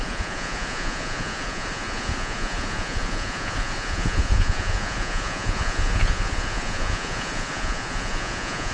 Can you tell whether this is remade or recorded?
remade